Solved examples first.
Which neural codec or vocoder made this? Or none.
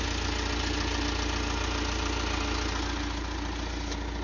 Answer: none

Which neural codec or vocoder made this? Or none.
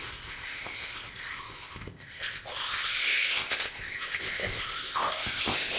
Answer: codec, ZipCodec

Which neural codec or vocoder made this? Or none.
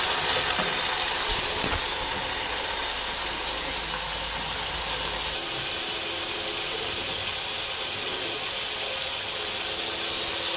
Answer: none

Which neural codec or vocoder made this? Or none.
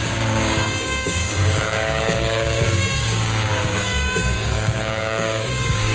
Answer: codec, DAC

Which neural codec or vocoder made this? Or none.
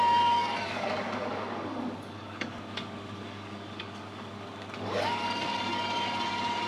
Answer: codec, DAC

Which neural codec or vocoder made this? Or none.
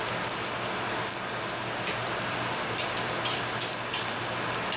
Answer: none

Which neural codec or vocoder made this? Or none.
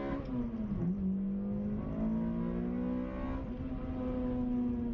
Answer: none